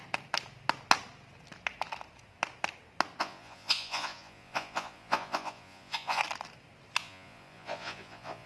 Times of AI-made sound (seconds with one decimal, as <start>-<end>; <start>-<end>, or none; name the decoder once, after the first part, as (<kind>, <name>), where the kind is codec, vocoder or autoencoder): 3.2-6.2 (vocoder, Vocos); 7.0-8.5